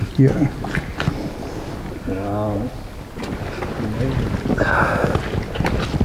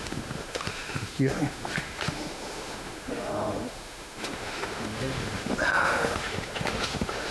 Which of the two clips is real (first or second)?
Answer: first